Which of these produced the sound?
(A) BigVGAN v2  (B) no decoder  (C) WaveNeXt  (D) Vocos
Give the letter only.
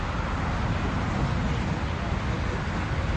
B